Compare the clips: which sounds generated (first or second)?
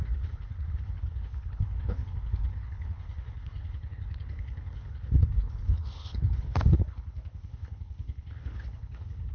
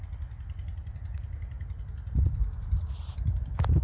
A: first